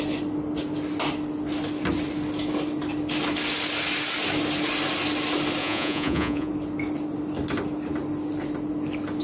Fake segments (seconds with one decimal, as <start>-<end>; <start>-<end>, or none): 5.6-6.5